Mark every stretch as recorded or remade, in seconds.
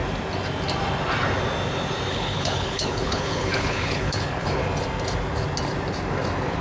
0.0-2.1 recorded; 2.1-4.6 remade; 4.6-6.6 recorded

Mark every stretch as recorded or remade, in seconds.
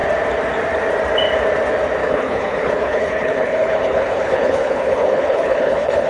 0.0-2.0 recorded; 2.0-6.1 remade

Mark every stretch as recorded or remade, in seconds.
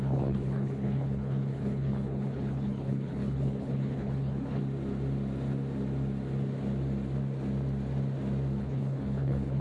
0.0-4.6 remade; 4.6-8.6 recorded; 8.6-9.6 remade